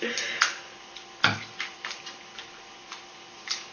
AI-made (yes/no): yes